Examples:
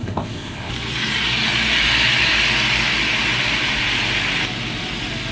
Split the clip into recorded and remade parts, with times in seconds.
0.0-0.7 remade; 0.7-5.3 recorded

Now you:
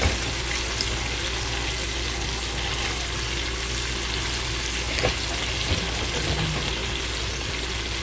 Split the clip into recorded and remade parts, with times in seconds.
0.0-8.0 recorded

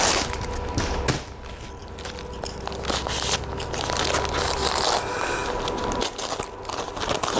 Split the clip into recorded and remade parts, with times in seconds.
0.0-7.4 recorded

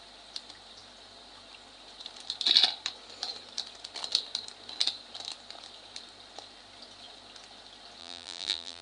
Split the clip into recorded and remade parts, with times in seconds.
0.0-8.0 recorded; 8.0-8.8 remade